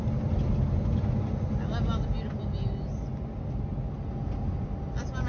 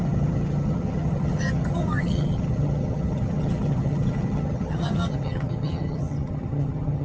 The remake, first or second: second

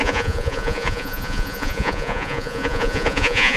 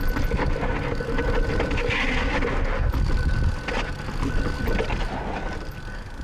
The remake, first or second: first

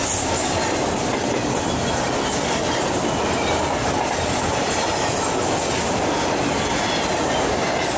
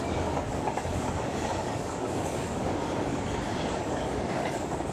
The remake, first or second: second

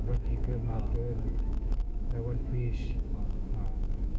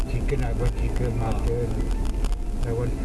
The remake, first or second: first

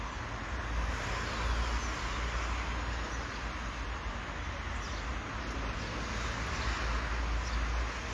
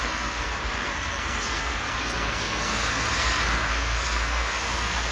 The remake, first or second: second